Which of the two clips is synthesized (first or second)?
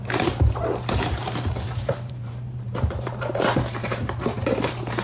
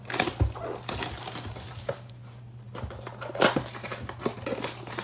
first